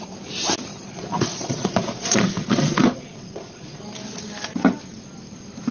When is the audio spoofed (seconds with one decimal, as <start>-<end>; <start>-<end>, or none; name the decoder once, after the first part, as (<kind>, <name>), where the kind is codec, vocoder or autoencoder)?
0.7-3.8 (vocoder, Vocos)

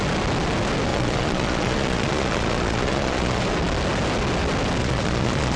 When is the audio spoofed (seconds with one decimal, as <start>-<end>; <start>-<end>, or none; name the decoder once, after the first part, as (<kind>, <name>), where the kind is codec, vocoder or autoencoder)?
0.9-3.4 (vocoder, Vocos); 4.8-5.6

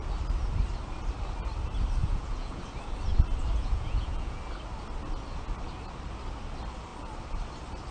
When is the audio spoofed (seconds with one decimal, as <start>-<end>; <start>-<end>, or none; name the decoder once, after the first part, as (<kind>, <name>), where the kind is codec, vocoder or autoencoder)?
2.0-2.6 (vocoder, Vocos); 3.6-4.4